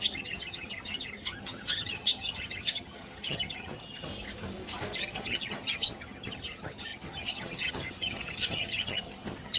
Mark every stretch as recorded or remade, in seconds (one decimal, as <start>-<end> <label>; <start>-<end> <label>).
0.0-4.1 remade; 4.1-5.0 recorded; 5.0-9.6 remade